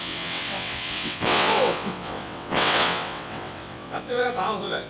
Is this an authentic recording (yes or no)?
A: no